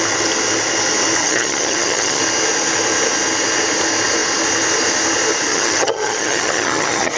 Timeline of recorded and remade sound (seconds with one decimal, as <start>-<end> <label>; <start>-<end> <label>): 0.0-1.2 recorded; 1.2-2.2 remade; 2.2-5.5 recorded; 5.5-7.2 remade